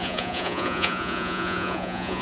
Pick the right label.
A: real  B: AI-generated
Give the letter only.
B